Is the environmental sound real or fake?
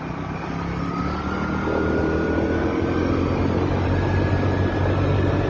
real